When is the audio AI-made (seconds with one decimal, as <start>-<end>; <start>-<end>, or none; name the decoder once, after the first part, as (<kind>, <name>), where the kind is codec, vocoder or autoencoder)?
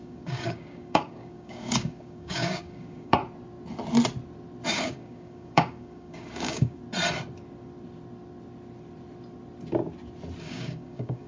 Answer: 0.0-3.2 (codec, DAC); 4.7-6.8; 10.4-11.3